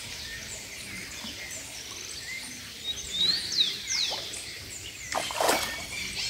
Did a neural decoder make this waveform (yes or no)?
yes